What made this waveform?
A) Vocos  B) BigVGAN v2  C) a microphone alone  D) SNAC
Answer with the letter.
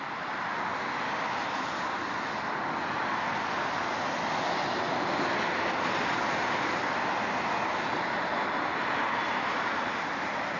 C